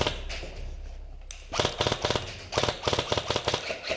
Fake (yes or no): no